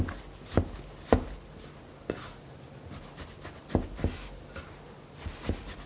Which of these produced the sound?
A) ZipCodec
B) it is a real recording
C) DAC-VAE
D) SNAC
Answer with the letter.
B